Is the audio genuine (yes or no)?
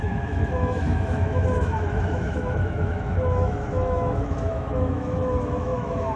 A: no